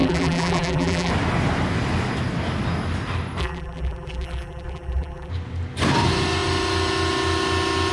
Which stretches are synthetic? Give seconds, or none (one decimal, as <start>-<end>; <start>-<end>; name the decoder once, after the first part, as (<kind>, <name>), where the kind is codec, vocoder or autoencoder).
0.0-1.1 (vocoder, BigVGAN v2); 3.4-5.3